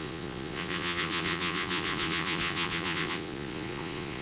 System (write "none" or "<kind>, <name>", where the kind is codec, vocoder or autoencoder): vocoder, Vocos